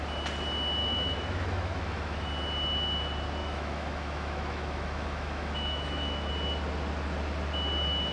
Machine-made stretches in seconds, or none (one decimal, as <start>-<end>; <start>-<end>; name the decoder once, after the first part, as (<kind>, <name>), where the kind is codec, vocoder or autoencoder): 0.8-2.3 (autoencoder, DAC-VAE); 3.4-6.3